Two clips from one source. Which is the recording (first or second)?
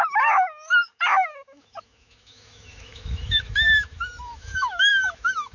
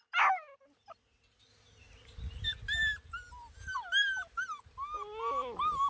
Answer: second